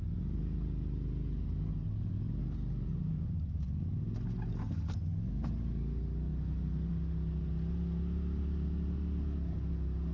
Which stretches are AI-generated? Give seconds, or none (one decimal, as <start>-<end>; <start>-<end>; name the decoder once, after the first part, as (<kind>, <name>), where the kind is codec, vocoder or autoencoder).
none